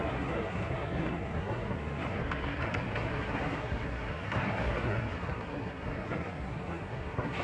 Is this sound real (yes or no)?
no